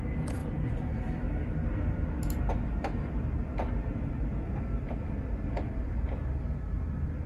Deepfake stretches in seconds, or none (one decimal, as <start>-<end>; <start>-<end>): none